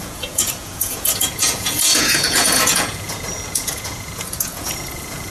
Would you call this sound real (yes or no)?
no